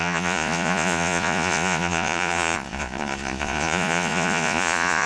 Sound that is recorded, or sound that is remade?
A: remade